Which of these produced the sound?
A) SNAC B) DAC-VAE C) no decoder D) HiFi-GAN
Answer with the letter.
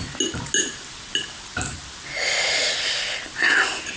C